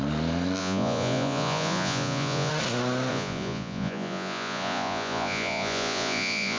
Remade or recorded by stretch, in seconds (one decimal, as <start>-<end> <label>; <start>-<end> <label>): 0.0-0.6 recorded; 0.6-2.5 remade; 2.5-3.1 recorded; 3.1-6.6 remade